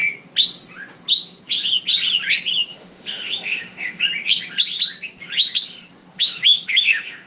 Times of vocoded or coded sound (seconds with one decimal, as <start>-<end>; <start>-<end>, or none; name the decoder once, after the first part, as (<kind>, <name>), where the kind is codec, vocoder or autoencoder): 2.7-4.0 (autoencoder, DAC-VAE); 6.1-7.3